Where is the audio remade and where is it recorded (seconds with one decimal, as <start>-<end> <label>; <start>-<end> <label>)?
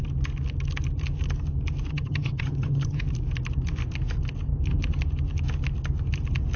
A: 0.0-1.9 recorded; 1.9-3.0 remade; 3.0-6.6 recorded